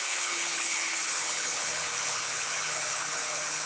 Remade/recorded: remade